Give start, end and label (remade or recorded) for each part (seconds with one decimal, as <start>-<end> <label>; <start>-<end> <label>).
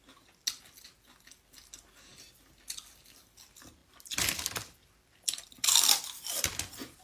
0.0-3.8 recorded; 3.8-7.0 remade